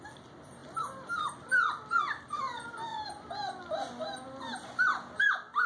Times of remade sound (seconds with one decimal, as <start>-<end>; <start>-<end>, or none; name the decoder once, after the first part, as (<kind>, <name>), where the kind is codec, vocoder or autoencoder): none